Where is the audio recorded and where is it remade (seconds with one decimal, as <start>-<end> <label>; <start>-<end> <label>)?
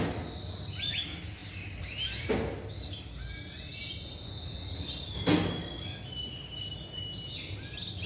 0.0-8.1 recorded